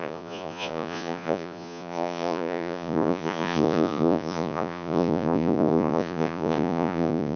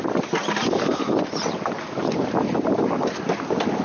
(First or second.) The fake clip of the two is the first